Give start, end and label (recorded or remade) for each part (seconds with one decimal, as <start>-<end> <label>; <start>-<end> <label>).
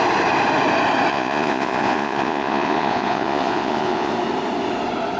0.0-1.1 recorded; 1.1-4.1 remade; 4.1-5.2 recorded